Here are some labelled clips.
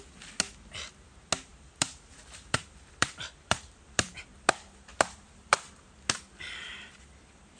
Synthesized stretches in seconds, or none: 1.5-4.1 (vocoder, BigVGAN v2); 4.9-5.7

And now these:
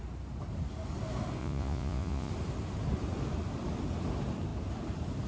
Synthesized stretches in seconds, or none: 1.4-2.3 (vocoder, Vocos)

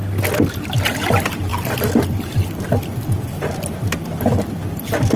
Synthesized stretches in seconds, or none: none